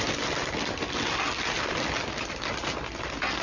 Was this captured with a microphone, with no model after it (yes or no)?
yes